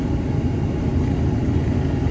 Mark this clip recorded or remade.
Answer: recorded